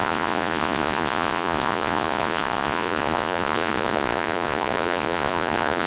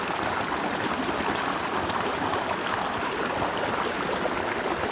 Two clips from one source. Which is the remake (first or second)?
first